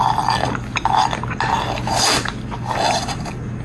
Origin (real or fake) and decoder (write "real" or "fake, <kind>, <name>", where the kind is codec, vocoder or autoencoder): real